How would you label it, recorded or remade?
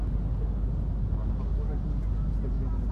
recorded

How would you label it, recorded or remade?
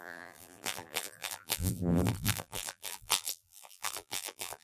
remade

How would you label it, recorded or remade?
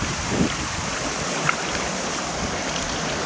recorded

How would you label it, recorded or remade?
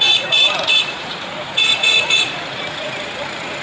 remade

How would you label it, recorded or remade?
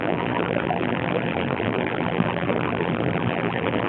remade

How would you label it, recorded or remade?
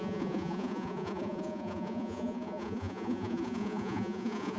remade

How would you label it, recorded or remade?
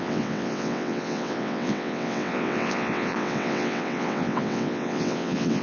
remade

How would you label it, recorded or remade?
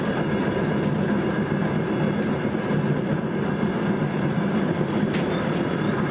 recorded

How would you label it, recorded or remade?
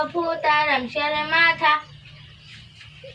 recorded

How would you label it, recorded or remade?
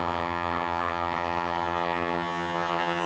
remade